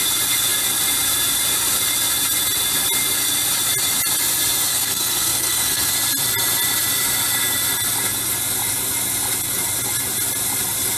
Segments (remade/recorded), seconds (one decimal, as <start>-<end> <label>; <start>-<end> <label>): 0.0-4.7 recorded; 4.7-5.9 remade; 5.9-11.0 recorded

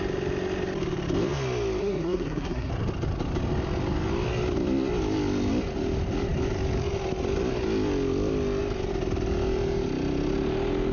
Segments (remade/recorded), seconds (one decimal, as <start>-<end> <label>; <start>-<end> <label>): 0.0-1.8 recorded; 1.8-2.7 remade; 2.7-10.9 recorded